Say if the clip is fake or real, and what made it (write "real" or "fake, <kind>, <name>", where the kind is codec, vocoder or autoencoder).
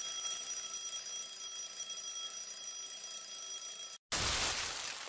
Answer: real